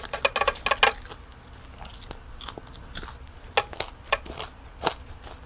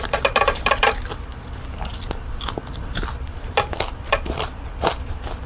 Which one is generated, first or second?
second